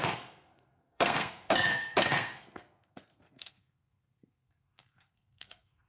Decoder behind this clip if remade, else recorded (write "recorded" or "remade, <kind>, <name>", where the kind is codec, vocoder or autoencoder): remade, codec, SNAC